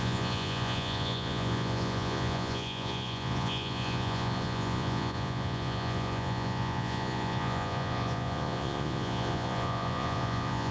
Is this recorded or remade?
remade